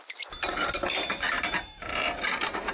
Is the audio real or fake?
fake